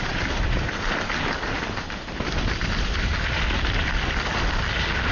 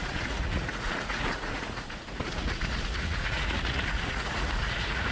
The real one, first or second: first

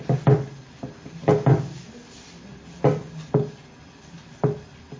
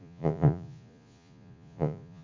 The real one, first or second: first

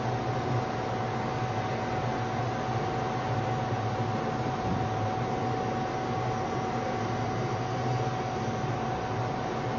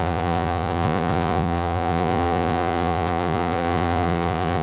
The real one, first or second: first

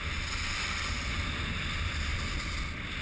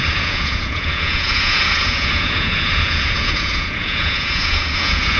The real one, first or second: first